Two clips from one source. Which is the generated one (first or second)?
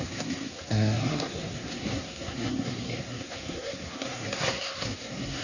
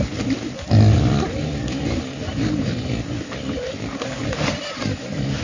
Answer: first